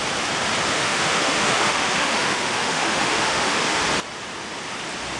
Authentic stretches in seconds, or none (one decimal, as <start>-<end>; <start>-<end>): 0.0-0.7; 3.8-5.2